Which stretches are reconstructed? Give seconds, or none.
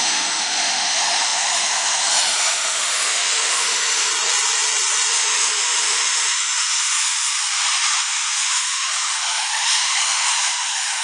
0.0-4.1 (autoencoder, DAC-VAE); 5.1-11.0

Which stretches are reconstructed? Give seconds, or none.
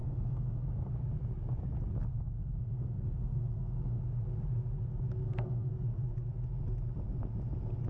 0.0-0.9 (codec, SNAC); 2.1-4.0; 5.2-5.7